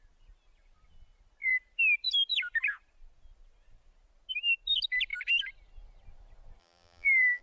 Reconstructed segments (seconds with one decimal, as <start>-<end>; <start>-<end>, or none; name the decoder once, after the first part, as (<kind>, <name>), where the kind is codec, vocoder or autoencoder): 6.6-7.4 (vocoder, BigVGAN v2)